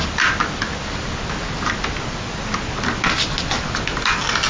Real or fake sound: real